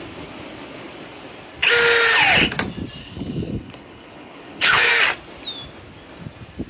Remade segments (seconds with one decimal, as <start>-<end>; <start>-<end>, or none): 3.0-4.9